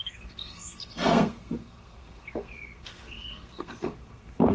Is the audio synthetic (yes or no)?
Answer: yes